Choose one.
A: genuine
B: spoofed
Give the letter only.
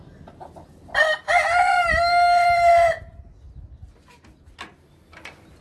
A